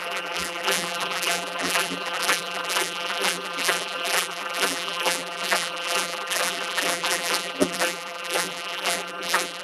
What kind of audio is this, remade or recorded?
remade